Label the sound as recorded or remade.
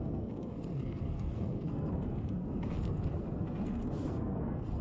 remade